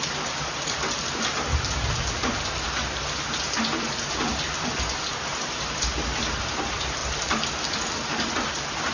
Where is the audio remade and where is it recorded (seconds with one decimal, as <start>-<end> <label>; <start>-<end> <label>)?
0.0-8.9 recorded